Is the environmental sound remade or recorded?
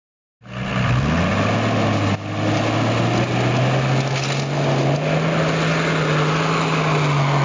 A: recorded